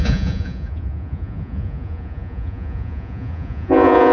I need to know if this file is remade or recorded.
remade